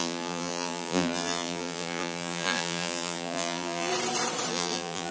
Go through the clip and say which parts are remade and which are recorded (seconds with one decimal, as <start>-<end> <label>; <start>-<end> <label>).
0.0-3.9 remade; 3.9-4.5 recorded; 4.5-5.1 remade